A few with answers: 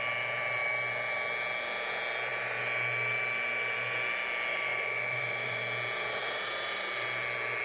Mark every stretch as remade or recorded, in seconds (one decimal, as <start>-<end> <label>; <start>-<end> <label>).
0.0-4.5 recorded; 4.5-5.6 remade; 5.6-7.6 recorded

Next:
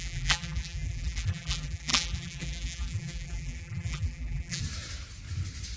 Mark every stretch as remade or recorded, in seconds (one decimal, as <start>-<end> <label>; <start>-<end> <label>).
0.0-4.6 remade; 4.6-5.8 recorded

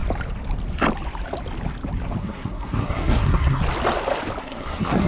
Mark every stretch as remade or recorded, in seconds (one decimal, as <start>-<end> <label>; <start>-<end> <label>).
0.0-2.2 recorded; 2.2-3.6 remade; 3.6-4.4 recorded; 4.4-5.1 remade

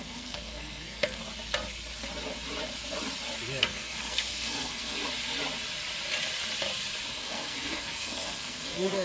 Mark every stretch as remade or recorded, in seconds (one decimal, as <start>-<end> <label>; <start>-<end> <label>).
0.0-1.2 remade; 1.2-3.6 recorded; 3.6-5.0 remade; 5.0-7.1 recorded; 7.1-9.0 remade